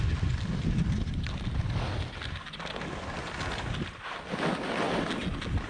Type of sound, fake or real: real